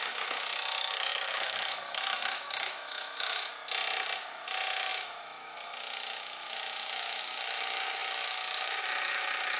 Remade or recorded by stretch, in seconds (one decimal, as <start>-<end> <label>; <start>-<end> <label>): 0.0-3.5 remade; 3.5-4.3 recorded; 4.3-9.6 remade